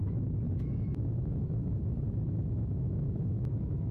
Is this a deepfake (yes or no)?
yes